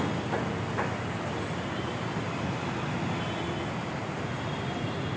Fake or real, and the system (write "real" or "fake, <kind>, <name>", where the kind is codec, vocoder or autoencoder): real